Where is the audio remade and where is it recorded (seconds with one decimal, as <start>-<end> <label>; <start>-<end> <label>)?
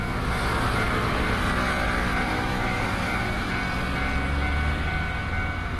0.0-2.3 recorded; 2.3-3.5 remade; 3.5-5.8 recorded